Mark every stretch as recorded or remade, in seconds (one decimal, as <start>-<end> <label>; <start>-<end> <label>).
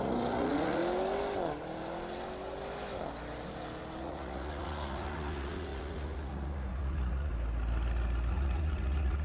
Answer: 0.0-0.8 remade; 0.8-4.0 recorded; 4.0-7.3 remade; 7.3-8.3 recorded; 8.3-9.2 remade